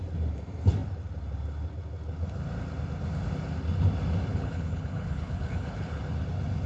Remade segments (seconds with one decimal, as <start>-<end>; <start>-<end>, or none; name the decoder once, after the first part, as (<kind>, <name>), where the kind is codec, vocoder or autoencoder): 4.3-6.0 (codec, HILCodec)